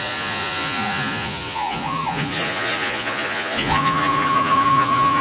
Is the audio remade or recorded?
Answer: remade